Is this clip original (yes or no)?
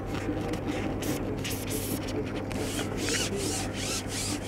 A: yes